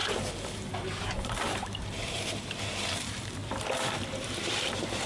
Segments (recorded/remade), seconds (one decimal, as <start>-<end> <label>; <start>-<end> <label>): 0.0-3.4 remade; 3.4-3.9 recorded; 3.9-5.1 remade